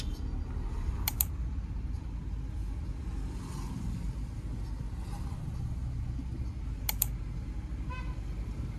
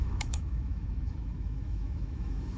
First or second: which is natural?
first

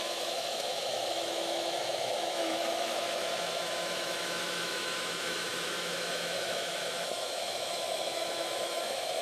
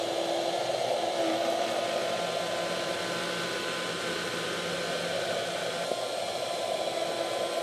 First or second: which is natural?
second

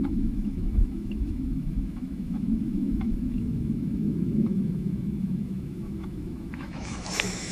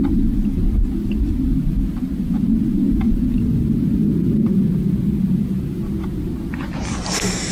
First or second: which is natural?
second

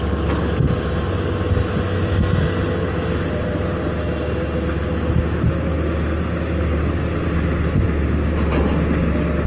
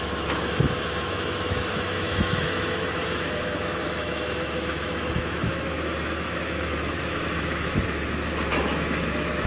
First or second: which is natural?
first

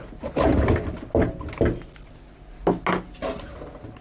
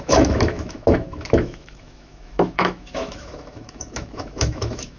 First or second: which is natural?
first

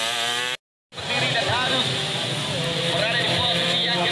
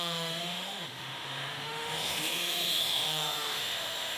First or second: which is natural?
first